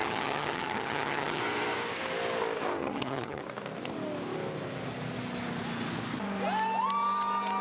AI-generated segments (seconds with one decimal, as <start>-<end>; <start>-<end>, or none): 0.0-1.4; 2.8-3.4

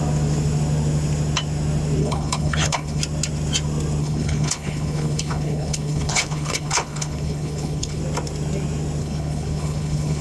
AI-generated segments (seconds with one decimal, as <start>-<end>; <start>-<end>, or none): 2.0-3.0; 4.0-8.0; 9.0-10.2

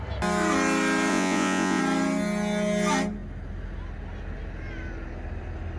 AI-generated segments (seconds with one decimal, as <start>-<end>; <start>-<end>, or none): 1.1-1.8

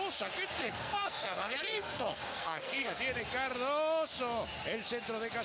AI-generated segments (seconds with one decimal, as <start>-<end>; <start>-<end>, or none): 0.6-3.0

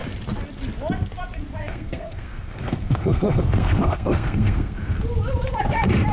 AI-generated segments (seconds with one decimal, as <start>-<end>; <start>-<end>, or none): 1.6-5.0

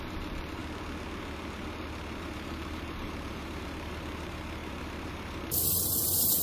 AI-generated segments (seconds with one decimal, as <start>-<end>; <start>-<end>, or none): 0.0-0.6; 2.2-6.4

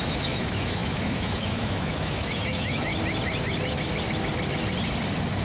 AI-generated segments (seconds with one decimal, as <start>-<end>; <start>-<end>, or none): 0.0-2.9

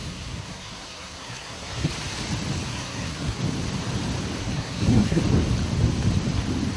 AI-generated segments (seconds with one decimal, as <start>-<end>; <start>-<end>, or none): 0.0-1.9; 2.7-3.4; 4.4-5.2